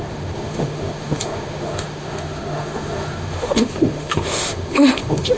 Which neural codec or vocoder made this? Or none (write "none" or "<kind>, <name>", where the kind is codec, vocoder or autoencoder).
autoencoder, DAC-VAE